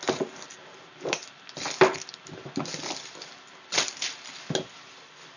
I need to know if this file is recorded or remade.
recorded